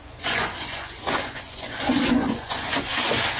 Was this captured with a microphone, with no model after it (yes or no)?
no